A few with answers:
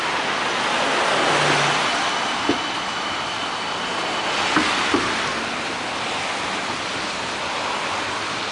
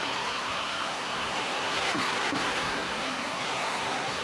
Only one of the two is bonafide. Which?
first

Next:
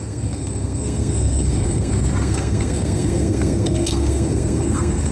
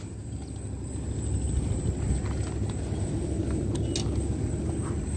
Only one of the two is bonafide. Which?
second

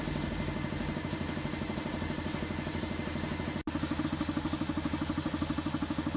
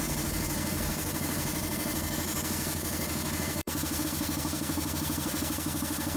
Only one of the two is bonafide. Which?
first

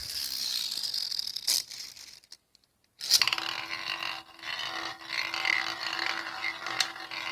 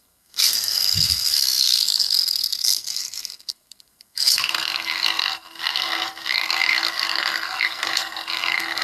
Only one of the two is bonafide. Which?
first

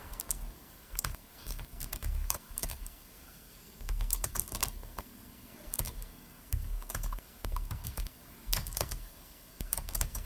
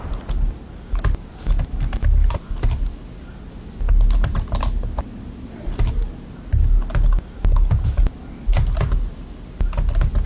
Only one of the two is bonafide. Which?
second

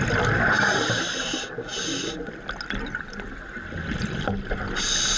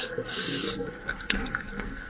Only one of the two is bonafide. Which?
first